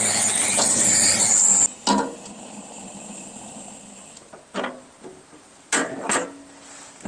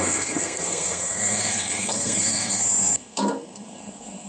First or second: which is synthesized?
second